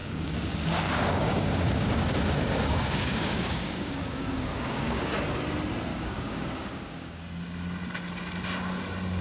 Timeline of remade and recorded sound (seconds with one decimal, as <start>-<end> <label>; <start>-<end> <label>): 0.0-5.2 remade; 5.2-5.9 recorded; 5.9-7.2 remade; 7.2-9.2 recorded